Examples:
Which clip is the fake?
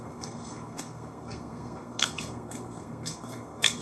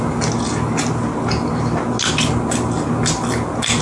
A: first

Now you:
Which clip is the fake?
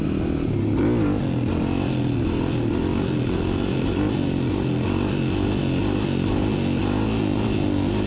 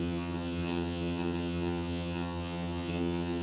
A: second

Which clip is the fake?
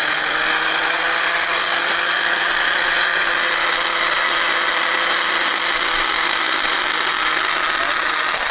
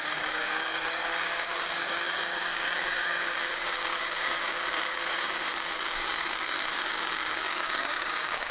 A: second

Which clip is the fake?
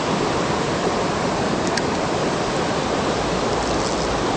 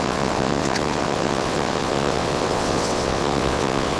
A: second